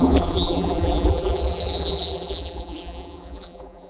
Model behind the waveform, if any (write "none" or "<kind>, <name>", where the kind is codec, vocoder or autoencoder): vocoder, BigVGAN v2